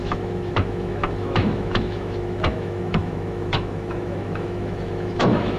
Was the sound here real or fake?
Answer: fake